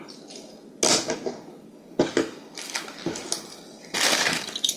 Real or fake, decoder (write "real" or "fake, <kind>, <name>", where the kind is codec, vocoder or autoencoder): real